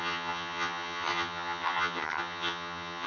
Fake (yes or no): yes